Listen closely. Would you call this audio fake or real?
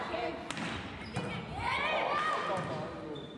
real